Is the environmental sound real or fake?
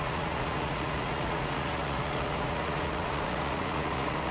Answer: fake